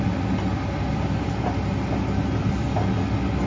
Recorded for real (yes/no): yes